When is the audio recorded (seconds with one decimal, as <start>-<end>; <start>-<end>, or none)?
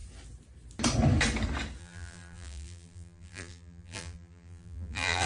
0.0-1.8